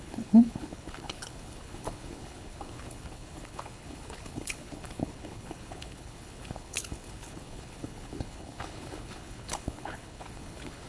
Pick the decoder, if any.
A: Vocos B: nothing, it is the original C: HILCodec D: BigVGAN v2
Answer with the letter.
C